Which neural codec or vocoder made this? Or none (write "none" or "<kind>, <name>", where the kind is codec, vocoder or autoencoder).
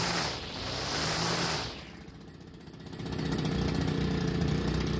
none